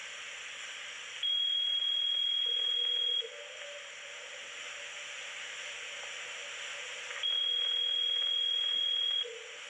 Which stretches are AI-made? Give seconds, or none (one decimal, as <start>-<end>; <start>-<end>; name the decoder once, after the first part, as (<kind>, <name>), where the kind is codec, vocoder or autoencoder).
0.0-1.8 (vocoder, BigVGAN v2)